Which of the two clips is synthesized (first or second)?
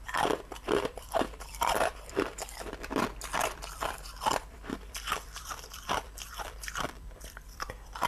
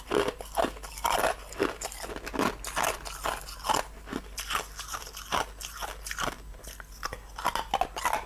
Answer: first